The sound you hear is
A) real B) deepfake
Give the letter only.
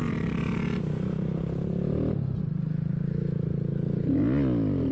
A